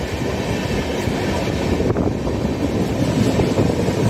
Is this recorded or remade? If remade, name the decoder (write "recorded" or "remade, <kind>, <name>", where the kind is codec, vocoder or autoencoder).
recorded